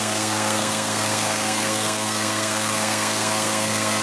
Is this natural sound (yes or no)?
no